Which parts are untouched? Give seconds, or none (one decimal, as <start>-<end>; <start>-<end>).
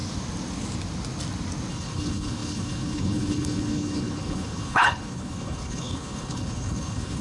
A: 0.0-1.7